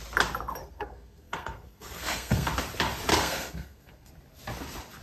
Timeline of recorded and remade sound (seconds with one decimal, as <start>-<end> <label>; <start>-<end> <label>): 0.0-0.6 recorded; 0.6-2.5 remade; 2.5-3.1 recorded; 3.1-4.1 remade; 4.1-5.0 recorded